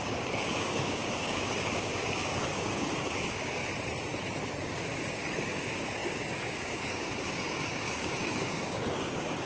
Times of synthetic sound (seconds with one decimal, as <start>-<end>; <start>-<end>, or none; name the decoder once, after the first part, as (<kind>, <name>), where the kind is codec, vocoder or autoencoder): 0.0-3.6 (codec, DAC); 4.6-9.5

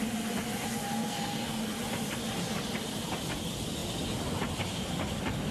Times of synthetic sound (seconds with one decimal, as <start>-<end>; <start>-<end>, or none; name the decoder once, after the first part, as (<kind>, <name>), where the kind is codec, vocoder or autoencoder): 0.9-1.6 (codec, SNAC)

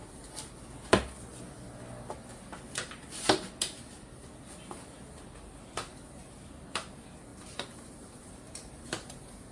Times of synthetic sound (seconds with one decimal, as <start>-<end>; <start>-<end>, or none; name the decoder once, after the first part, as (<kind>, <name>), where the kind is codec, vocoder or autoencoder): 7.3-9.5 (vocoder, BigVGAN v2)